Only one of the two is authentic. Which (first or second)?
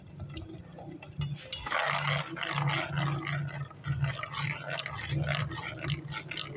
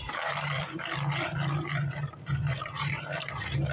first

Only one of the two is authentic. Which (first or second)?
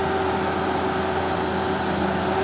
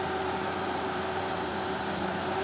first